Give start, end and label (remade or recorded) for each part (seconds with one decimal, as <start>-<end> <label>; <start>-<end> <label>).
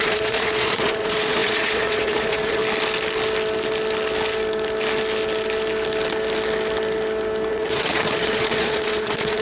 0.0-2.6 remade; 2.6-7.5 recorded; 7.5-9.4 remade